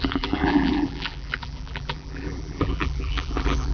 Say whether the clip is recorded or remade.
remade